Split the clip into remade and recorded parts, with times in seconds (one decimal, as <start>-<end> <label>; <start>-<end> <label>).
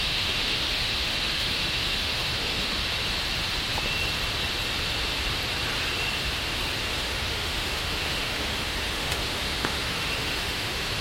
0.0-2.8 remade; 2.8-6.9 recorded; 6.9-11.0 remade